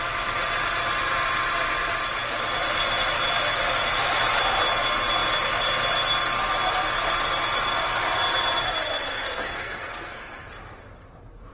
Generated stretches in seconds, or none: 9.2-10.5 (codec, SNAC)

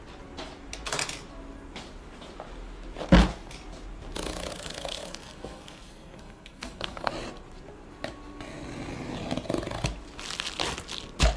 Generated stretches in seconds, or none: 4.5-7.1 (codec, SNAC)

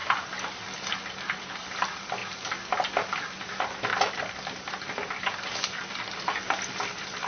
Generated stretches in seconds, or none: none

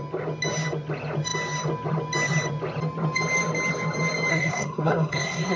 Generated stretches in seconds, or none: 4.3-5.6 (codec, SNAC)

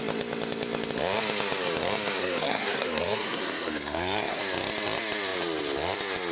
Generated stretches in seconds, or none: 2.2-4.4 (codec, SNAC)

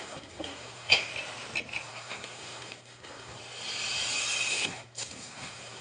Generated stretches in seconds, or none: 0.0-1.1 (codec, SNAC); 1.9-3.4; 4.5-5.8